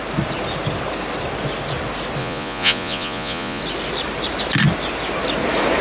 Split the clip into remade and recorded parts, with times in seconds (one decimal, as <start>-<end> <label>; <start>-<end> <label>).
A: 0.0-2.2 recorded; 2.2-3.6 remade; 3.6-5.8 recorded